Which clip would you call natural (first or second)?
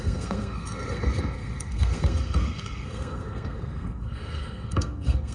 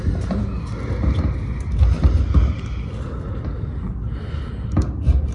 second